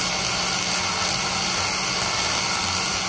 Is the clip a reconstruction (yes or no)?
no